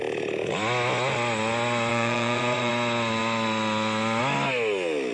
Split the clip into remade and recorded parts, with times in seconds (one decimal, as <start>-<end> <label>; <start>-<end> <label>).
0.0-1.9 recorded; 1.9-2.7 remade; 2.7-5.1 recorded